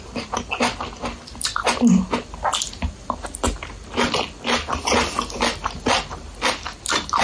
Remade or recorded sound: recorded